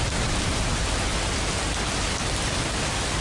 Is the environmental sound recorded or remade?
recorded